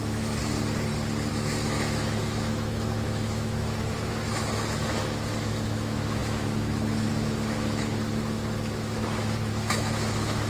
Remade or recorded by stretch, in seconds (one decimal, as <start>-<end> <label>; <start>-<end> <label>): 0.0-0.4 remade; 0.4-1.3 recorded; 1.3-10.5 remade